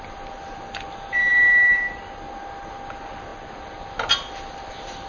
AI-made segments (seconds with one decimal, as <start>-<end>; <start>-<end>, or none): none